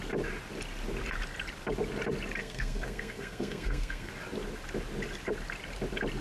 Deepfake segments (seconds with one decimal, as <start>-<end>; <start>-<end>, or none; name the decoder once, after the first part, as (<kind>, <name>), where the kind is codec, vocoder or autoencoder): 2.4-4.1 (codec, SNAC)

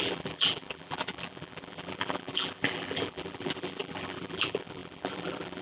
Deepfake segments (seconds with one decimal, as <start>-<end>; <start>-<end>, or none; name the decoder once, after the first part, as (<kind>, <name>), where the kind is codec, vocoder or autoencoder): 0.0-5.6 (vocoder, BigVGAN v2)

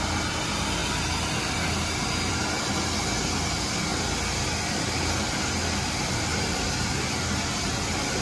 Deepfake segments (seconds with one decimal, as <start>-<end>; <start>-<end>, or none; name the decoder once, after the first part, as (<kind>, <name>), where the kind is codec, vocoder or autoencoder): none